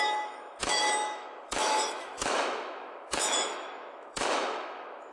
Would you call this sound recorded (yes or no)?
no